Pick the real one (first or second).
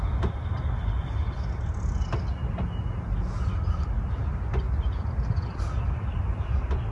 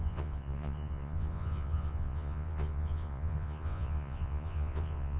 first